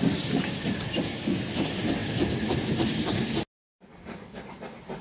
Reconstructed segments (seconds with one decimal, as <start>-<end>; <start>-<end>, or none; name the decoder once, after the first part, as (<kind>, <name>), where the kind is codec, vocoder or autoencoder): 3.9-4.4 (codec, DAC)